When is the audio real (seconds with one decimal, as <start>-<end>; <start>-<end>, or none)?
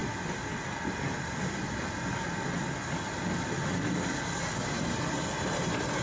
0.0-6.0